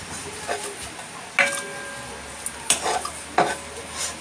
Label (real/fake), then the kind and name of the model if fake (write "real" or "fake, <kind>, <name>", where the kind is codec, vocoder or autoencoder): real